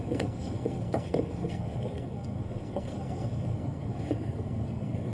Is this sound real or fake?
fake